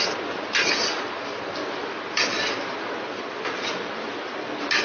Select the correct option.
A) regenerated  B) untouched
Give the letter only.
B